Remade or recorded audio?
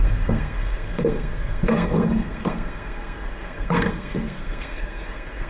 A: remade